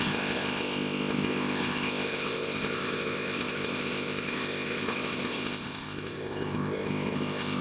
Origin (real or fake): fake